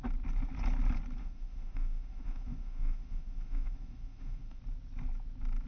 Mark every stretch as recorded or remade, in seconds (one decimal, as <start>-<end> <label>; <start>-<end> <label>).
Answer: 0.0-1.2 recorded; 1.2-4.6 remade; 4.6-5.7 recorded

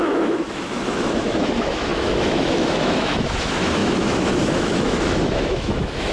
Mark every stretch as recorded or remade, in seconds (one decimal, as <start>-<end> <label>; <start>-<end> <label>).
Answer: 0.0-6.1 remade

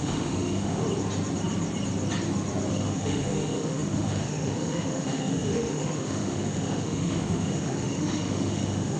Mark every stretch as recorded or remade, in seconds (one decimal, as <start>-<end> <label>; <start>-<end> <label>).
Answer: 0.0-0.8 remade; 0.8-2.7 recorded; 2.7-9.0 remade

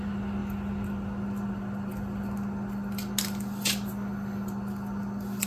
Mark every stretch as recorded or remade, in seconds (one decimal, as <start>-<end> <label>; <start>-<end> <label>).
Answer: 0.0-5.5 recorded

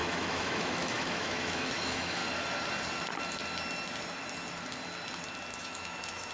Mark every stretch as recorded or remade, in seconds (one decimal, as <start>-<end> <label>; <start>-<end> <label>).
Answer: 0.0-2.2 remade; 2.2-5.6 recorded; 5.6-6.3 remade

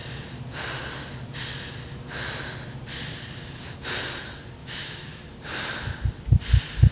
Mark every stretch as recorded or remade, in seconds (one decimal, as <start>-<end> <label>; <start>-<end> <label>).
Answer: 0.0-4.6 recorded; 4.6-5.2 remade; 5.2-6.9 recorded

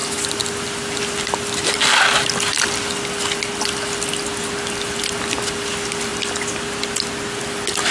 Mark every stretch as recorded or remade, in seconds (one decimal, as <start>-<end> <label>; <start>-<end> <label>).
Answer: 0.0-7.9 recorded

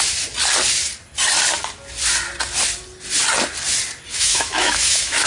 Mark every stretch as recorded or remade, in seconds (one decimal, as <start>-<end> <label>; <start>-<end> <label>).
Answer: 0.0-4.1 recorded; 4.1-5.3 remade